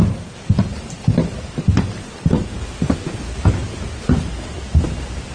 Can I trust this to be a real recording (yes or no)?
yes